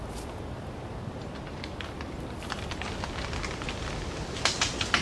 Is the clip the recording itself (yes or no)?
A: yes